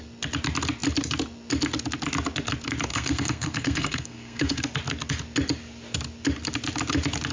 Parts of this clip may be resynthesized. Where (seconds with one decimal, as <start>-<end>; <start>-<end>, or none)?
2.9-4.6